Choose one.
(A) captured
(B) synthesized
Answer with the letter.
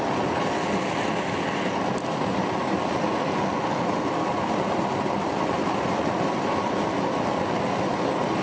A